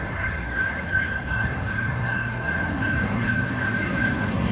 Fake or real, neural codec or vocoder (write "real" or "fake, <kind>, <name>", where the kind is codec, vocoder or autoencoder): fake, codec, SNAC